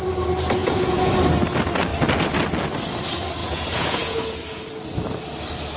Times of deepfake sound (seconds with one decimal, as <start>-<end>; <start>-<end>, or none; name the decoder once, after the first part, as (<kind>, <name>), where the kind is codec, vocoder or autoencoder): 0.6-1.1 (vocoder, Vocos); 3.4-4.7